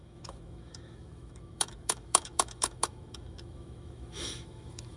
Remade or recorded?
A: remade